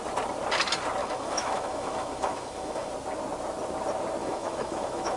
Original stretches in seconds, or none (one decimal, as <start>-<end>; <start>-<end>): 0.0-1.0; 2.9-4.2